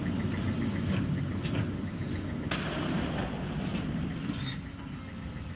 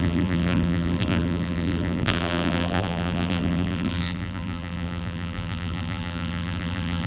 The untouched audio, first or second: first